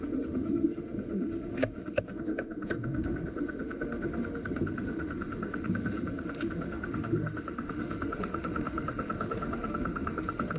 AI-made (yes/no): yes